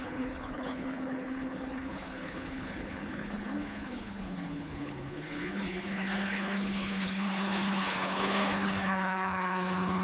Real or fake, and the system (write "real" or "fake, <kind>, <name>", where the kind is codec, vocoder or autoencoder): fake, codec, HILCodec